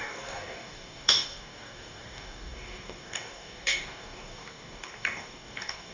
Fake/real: fake